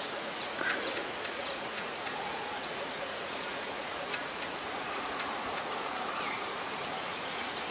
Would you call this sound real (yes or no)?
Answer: no